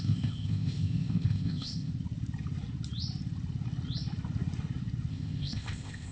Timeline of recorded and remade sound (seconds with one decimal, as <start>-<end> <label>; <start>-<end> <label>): 0.0-1.9 remade; 1.9-5.1 recorded; 5.1-6.1 remade